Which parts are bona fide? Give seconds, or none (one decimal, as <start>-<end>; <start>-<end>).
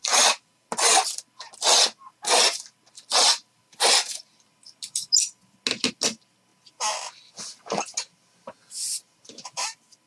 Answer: 0.5-10.1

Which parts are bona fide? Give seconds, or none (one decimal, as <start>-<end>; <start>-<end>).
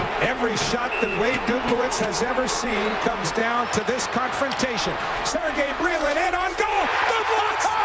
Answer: 3.4-4.8; 6.9-7.8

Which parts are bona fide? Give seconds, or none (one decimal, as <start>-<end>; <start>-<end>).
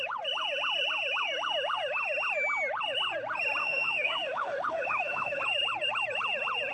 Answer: 0.0-3.6; 5.4-6.7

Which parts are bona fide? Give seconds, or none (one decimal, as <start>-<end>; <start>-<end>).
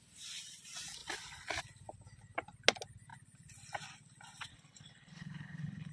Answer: 0.0-4.5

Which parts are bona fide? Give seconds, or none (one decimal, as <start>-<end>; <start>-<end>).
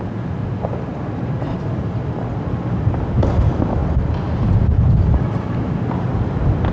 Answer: 0.0-3.8; 5.8-6.7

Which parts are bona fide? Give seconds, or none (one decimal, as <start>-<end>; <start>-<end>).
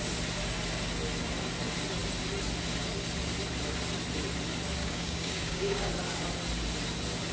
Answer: 0.0-4.8; 5.9-7.3